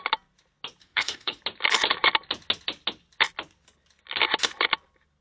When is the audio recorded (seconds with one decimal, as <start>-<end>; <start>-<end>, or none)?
0.0-0.8; 1.4-5.2